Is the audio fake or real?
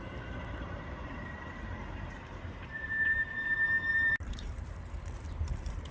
fake